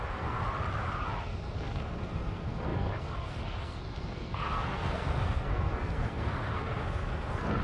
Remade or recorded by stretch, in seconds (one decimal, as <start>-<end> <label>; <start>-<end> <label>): 0.0-0.4 remade; 0.4-1.2 recorded; 1.2-7.6 remade